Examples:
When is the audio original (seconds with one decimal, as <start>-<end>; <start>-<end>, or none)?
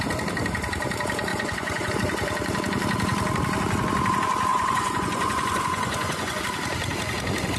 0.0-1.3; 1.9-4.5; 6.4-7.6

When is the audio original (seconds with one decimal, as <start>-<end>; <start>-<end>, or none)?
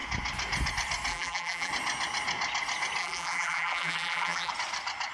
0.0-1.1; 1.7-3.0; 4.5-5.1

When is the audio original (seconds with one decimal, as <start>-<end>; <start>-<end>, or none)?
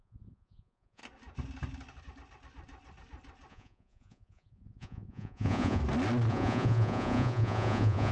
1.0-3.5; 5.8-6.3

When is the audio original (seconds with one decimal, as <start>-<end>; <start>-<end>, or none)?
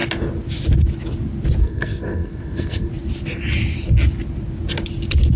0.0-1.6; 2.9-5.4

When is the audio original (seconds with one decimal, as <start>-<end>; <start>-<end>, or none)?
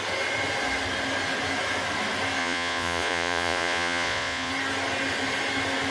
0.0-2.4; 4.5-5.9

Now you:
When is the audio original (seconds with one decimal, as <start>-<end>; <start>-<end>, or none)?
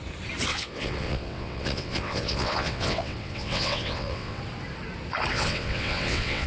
0.0-0.5; 4.4-5.3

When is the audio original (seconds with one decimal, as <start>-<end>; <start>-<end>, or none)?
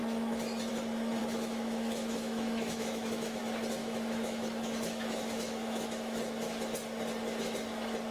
0.0-1.2; 3.4-3.8; 6.2-8.1